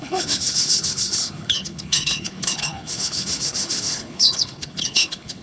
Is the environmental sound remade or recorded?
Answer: remade